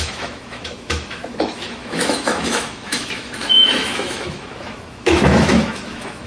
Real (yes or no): no